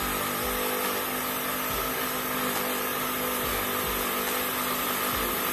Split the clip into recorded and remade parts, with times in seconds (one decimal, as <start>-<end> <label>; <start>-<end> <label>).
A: 0.0-5.5 recorded